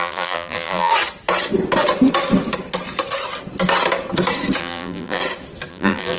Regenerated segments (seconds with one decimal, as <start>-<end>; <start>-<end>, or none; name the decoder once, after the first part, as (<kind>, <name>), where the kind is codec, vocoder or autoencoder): 0.0-0.9 (vocoder, BigVGAN v2); 4.6-5.2; 5.7-6.2